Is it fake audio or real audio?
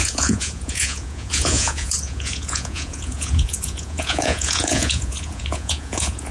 fake